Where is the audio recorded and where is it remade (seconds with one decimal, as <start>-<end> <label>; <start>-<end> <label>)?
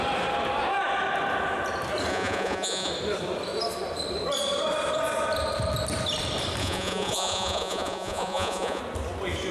0.0-2.1 recorded; 2.1-2.9 remade; 2.9-6.6 recorded; 6.6-8.8 remade; 8.8-9.5 recorded